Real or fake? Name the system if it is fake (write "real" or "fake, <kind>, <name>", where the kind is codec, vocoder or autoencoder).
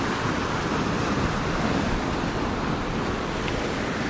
real